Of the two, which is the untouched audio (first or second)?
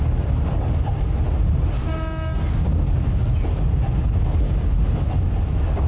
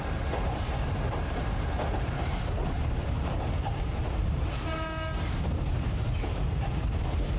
first